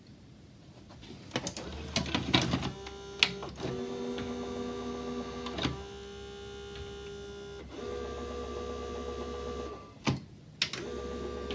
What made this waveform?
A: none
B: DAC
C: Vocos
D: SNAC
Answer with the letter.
A